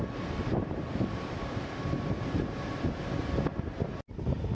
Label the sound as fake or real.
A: real